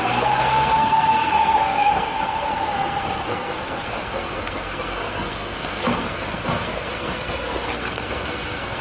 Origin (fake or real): fake